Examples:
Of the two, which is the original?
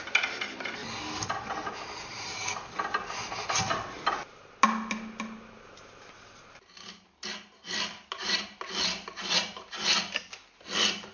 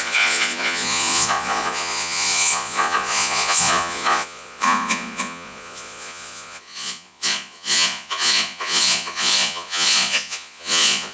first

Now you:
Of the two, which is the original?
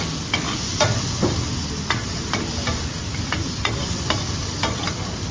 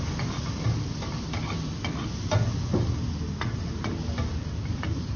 second